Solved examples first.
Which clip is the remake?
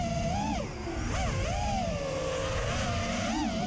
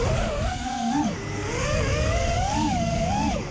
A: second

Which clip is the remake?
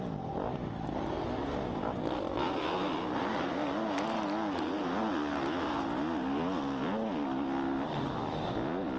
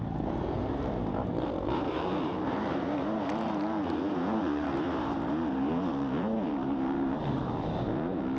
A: second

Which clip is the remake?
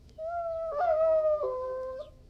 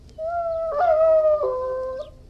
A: first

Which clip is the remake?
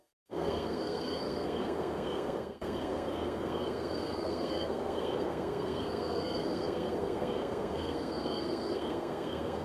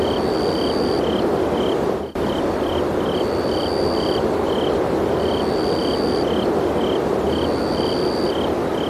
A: first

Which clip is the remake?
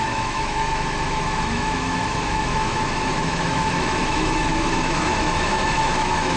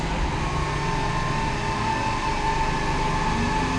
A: first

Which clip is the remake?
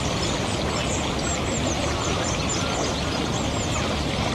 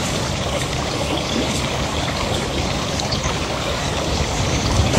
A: second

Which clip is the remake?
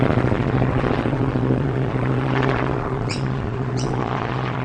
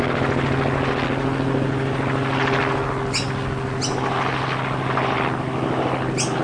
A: first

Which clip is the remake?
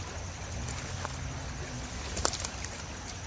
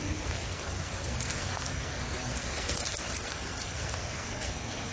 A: second